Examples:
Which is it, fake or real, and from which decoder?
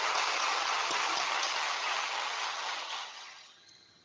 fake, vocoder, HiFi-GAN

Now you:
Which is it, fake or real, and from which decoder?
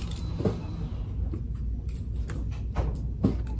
real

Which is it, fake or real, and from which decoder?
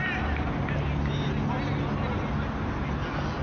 real